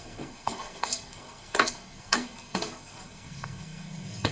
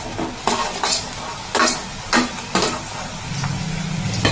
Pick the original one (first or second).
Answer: second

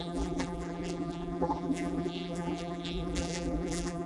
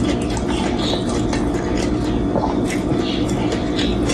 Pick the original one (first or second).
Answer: second